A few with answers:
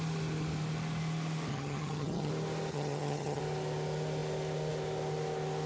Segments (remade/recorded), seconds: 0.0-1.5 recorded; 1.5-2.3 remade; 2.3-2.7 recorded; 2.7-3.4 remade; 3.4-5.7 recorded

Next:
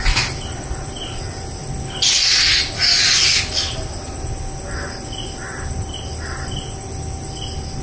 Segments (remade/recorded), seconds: 0.0-7.8 recorded